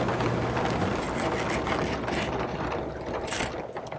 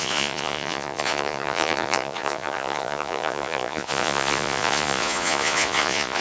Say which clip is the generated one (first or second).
second